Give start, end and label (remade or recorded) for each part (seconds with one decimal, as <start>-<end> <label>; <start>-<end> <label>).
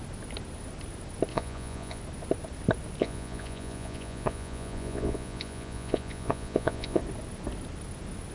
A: 0.0-1.3 recorded; 1.3-2.0 remade; 2.0-3.0 recorded; 3.0-7.0 remade; 7.0-8.3 recorded